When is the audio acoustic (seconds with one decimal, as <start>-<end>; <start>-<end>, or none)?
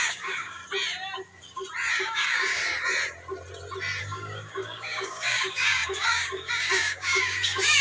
0.6-2.0; 2.6-4.0